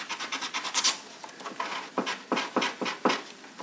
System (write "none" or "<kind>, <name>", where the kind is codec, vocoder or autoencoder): none